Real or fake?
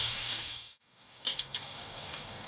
fake